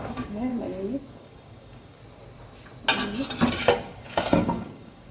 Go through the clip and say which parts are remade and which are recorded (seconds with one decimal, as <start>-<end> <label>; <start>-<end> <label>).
0.0-0.5 remade; 0.5-1.1 recorded; 1.1-2.0 remade; 2.0-3.6 recorded; 3.6-5.1 remade

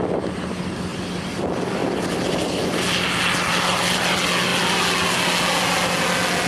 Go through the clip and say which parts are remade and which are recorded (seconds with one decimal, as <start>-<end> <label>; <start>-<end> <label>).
0.0-0.9 recorded; 0.9-1.4 remade; 1.4-6.5 recorded